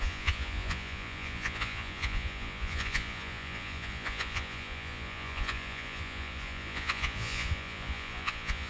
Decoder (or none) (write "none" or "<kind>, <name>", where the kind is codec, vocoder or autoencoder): vocoder, Vocos